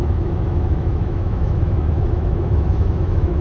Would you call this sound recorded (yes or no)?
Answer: no